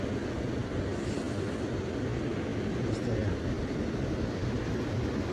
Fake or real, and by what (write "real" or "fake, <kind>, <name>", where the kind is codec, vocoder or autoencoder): real